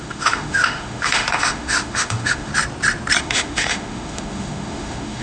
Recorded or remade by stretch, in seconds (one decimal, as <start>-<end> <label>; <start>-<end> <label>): 0.0-2.5 remade; 2.5-3.2 recorded; 3.2-5.2 remade